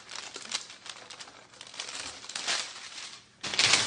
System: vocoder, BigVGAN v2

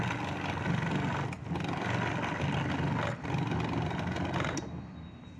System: none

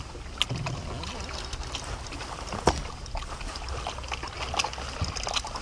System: none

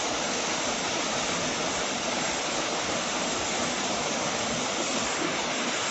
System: vocoder, BigVGAN v2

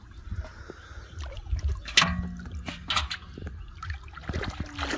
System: none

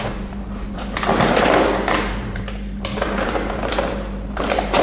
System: vocoder, BigVGAN v2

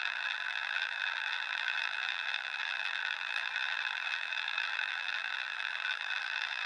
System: vocoder, BigVGAN v2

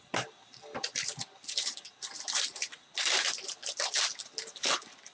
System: vocoder, BigVGAN v2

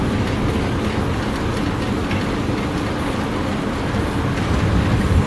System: none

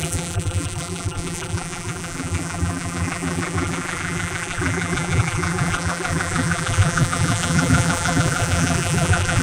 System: vocoder, BigVGAN v2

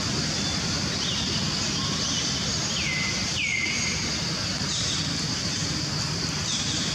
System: none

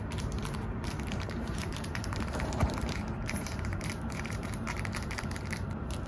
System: vocoder, BigVGAN v2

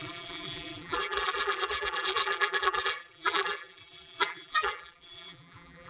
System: vocoder, BigVGAN v2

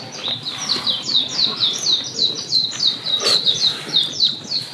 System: vocoder, BigVGAN v2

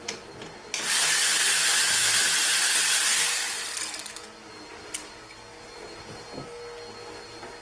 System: none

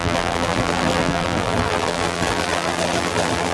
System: vocoder, BigVGAN v2